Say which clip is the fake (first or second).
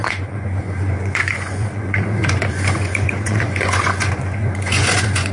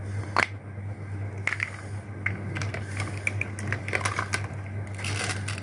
first